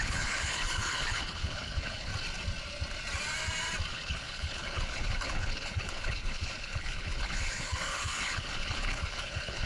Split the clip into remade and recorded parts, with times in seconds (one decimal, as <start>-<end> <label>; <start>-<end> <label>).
0.0-2.1 remade; 2.1-3.9 recorded; 3.9-9.7 remade

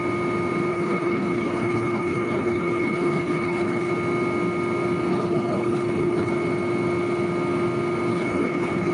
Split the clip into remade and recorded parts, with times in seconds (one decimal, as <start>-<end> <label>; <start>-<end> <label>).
0.0-0.7 recorded; 0.7-3.9 remade; 3.9-5.1 recorded; 5.1-6.3 remade; 6.3-8.1 recorded; 8.1-8.9 remade

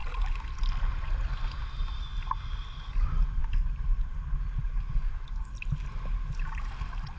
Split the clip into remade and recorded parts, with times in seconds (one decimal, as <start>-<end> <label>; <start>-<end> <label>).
0.0-7.2 recorded

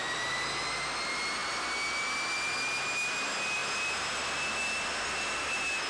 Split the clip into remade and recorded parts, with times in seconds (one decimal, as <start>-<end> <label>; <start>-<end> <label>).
0.0-5.9 recorded

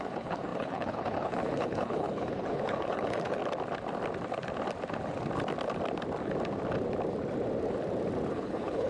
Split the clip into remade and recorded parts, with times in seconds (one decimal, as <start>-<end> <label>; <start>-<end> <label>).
0.0-3.4 remade; 3.4-8.3 recorded; 8.3-8.9 remade

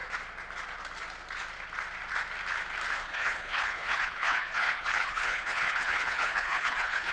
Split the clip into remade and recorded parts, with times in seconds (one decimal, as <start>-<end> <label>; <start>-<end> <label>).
0.0-3.0 recorded; 3.0-7.1 remade

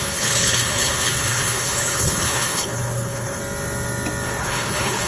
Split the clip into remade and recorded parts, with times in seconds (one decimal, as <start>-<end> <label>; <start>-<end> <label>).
0.0-3.4 remade; 3.4-4.4 recorded; 4.4-5.1 remade